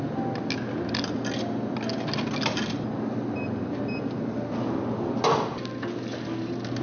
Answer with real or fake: real